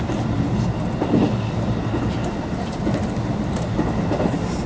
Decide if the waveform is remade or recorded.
recorded